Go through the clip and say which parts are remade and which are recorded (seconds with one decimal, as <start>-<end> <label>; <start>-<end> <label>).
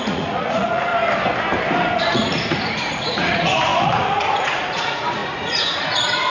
0.0-0.9 remade; 0.9-2.0 recorded; 2.0-6.3 remade